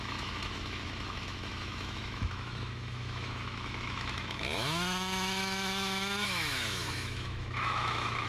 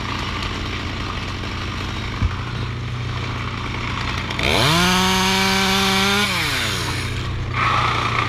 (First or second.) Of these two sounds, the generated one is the first